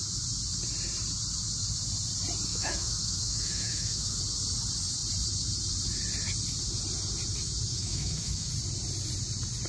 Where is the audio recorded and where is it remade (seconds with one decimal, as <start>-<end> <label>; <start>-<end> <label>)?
0.0-2.5 recorded; 2.5-4.2 remade; 4.2-7.7 recorded; 7.7-8.5 remade; 8.5-9.7 recorded